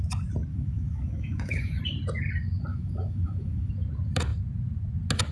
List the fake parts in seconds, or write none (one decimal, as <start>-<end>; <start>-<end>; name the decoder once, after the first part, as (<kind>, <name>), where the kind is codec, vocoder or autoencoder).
0.5-1.8 (autoencoder, DAC-VAE); 2.7-3.7